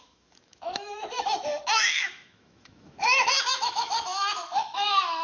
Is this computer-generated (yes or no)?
yes